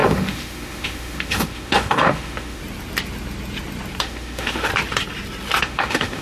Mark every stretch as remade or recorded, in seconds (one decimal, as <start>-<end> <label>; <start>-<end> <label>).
0.0-2.6 remade; 2.6-4.0 recorded; 4.0-4.7 remade; 4.7-5.6 recorded; 5.6-6.2 remade